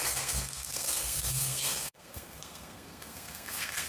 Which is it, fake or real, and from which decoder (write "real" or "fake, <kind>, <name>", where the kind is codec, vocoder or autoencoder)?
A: fake, codec, SNAC